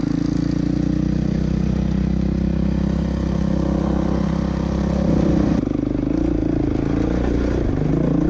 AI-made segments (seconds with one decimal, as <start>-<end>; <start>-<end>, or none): none